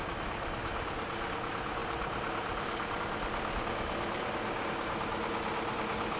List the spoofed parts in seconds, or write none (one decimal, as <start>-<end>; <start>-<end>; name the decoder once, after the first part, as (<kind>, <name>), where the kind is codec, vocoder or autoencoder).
none